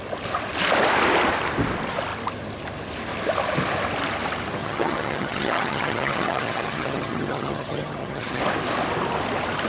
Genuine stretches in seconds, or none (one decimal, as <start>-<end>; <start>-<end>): 0.0-4.6; 8.4-9.7